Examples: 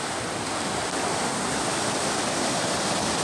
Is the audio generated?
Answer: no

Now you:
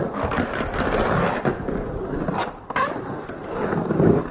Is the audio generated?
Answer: no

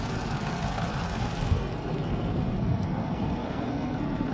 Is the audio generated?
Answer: yes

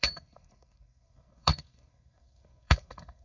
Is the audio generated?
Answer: yes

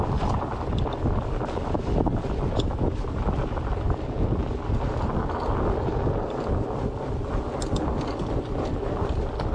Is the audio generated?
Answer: no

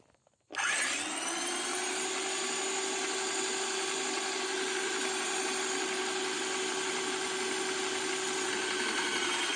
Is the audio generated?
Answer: no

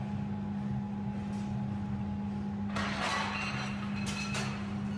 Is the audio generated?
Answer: no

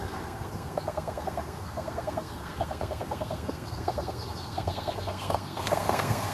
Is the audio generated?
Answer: yes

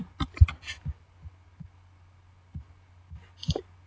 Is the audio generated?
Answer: no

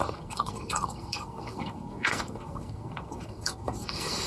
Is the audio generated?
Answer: yes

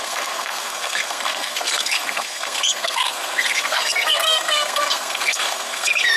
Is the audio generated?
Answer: yes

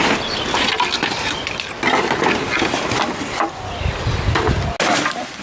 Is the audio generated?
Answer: no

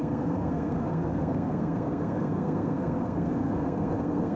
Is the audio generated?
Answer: yes